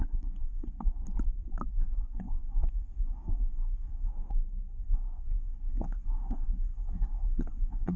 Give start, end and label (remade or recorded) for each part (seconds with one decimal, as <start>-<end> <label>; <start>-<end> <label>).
0.0-1.0 remade; 1.0-1.7 recorded; 1.7-4.1 remade; 4.1-4.8 recorded; 4.8-8.0 remade